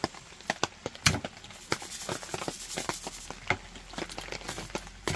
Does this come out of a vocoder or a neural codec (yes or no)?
no